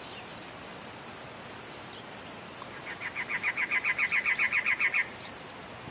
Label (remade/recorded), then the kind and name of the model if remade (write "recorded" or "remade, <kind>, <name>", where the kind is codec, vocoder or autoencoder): recorded